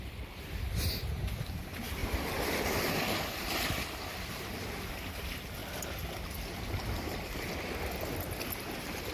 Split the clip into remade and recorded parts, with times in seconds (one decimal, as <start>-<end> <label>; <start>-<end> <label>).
0.0-2.0 recorded; 2.0-4.9 remade; 4.9-9.1 recorded